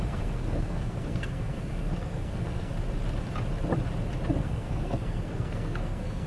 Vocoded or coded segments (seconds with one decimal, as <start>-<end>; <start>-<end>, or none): 0.0-2.7; 4.4-6.3

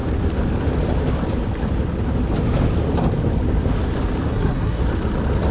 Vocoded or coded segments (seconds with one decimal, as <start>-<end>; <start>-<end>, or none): 4.3-4.8

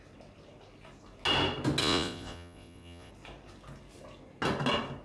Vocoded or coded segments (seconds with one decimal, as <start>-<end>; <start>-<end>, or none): 1.8-3.1

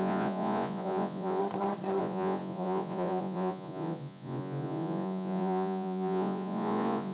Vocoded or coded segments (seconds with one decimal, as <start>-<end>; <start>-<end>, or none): 0.0-1.4; 2.0-7.1

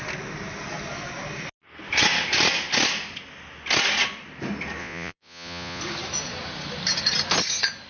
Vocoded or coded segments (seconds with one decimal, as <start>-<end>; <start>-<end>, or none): 4.8-5.8

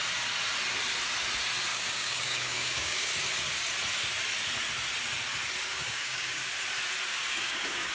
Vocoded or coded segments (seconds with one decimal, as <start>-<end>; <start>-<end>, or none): 1.7-3.1; 5.7-6.5; 7.1-7.9

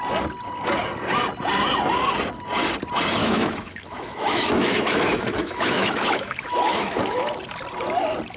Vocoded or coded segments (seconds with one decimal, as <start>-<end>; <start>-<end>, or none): 3.2-7.3